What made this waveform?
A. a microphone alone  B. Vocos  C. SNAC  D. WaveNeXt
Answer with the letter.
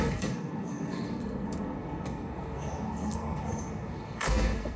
C